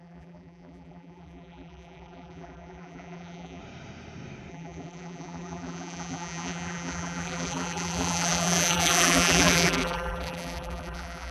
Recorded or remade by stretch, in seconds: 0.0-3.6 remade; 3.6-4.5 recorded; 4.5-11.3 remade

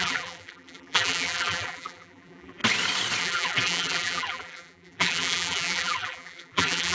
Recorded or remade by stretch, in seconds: 0.0-2.6 remade; 2.6-3.2 recorded; 3.2-6.9 remade